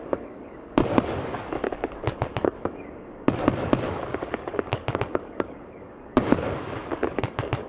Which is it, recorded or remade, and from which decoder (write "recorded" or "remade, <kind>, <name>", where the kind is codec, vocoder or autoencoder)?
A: remade, codec, DAC